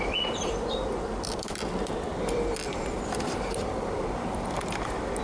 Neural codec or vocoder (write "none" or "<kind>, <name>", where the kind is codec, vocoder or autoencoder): vocoder, BigVGAN v2